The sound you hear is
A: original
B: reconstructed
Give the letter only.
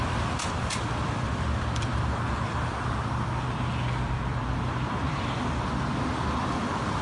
B